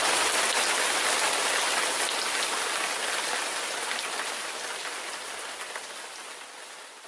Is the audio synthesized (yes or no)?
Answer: no